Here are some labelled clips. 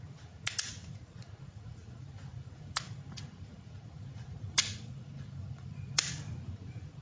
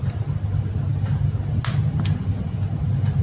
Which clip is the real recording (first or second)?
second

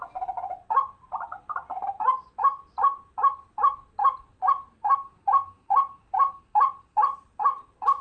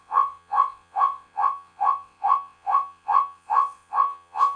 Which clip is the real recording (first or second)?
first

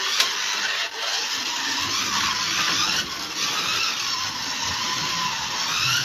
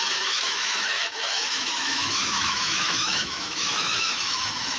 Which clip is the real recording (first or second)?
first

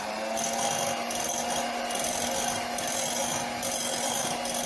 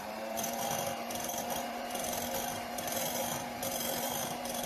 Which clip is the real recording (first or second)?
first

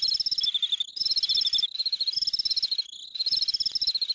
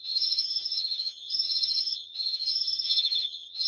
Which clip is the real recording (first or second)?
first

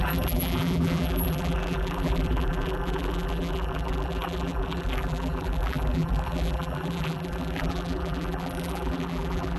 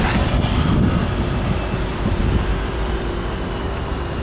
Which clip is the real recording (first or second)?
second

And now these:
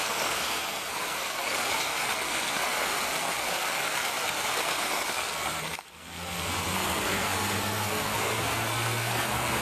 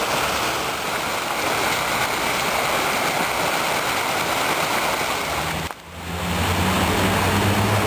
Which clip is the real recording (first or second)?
second